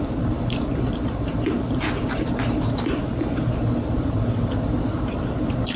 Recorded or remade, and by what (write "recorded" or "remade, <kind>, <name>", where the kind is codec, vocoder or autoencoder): remade, vocoder, BigVGAN v2